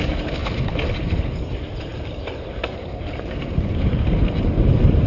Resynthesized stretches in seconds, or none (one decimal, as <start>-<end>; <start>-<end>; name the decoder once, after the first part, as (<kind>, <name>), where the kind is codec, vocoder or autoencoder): 0.0-0.4 (vocoder, BigVGAN v2); 1.5-5.1